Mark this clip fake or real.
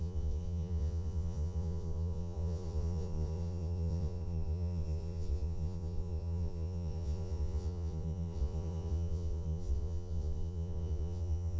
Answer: fake